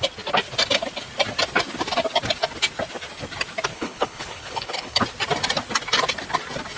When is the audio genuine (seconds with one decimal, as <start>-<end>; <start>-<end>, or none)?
0.0-3.7; 5.0-6.8